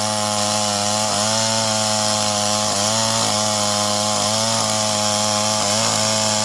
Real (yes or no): yes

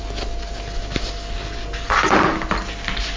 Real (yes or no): yes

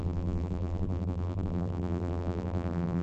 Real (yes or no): no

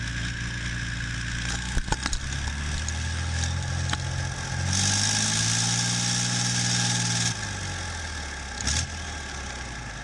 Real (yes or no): yes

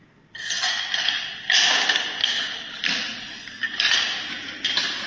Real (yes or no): yes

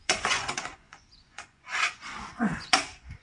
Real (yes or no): no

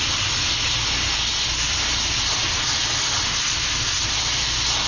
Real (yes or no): yes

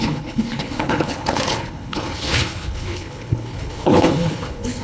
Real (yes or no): no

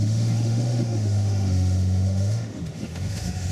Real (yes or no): no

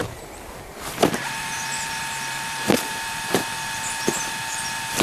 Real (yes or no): no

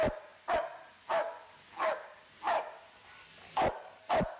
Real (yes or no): yes